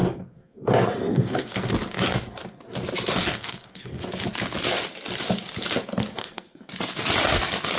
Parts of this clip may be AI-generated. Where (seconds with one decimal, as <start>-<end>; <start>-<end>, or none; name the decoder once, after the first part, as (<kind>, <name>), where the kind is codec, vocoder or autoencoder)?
0.0-0.7 (codec, SNAC); 1.1-1.7; 3.3-4.0; 6.2-6.7